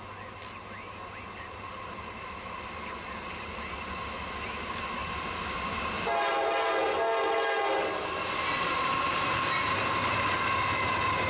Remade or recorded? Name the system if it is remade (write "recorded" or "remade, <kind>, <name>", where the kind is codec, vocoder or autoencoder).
recorded